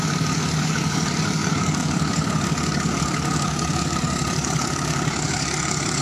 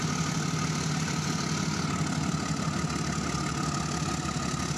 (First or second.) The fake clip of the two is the first